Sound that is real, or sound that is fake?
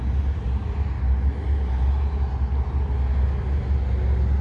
real